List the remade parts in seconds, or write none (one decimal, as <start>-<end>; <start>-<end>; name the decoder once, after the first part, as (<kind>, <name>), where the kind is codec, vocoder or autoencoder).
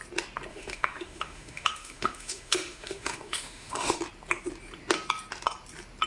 0.5-4.0 (autoencoder, DAC-VAE)